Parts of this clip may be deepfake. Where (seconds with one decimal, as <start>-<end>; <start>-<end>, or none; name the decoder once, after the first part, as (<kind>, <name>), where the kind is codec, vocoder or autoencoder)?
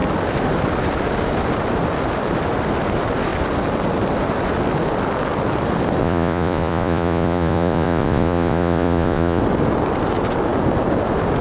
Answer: 6.0-9.4 (vocoder, Vocos)